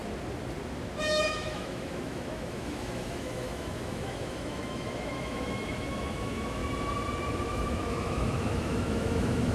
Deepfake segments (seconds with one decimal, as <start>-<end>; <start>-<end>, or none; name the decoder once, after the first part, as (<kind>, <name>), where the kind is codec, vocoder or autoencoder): 1.0-6.6 (autoencoder, DAC-VAE); 7.3-9.5